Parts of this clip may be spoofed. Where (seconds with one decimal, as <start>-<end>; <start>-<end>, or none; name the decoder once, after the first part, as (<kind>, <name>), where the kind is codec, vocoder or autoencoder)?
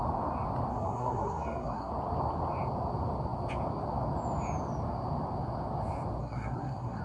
0.7-1.9 (codec, SNAC); 6.2-7.0